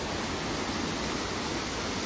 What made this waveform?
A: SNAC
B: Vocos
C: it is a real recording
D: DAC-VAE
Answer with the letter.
C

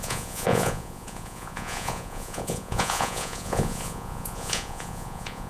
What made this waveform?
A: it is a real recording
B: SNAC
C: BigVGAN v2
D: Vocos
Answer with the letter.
D